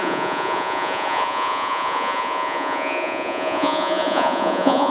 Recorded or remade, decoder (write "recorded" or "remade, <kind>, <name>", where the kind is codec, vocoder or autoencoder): remade, vocoder, Vocos